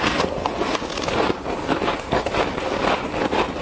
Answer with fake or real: real